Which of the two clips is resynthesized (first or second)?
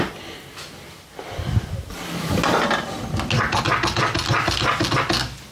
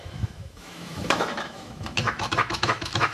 second